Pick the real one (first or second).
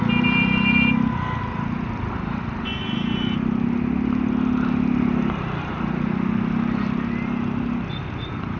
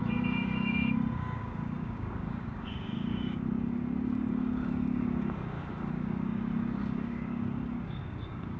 first